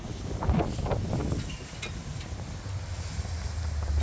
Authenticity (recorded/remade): recorded